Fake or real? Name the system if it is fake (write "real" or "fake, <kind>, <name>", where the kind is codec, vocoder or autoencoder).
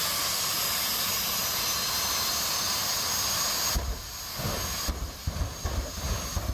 real